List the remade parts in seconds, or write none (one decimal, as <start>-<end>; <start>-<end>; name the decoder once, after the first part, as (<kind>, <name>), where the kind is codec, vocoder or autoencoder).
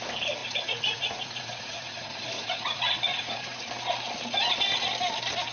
0.4-3.7 (vocoder, Vocos)